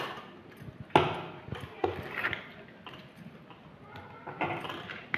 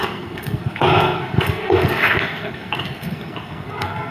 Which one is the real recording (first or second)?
first